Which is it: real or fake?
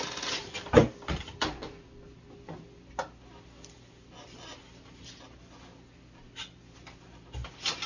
real